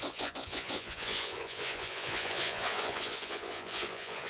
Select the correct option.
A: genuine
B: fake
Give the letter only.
B